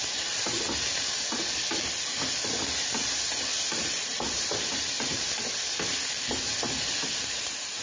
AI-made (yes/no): no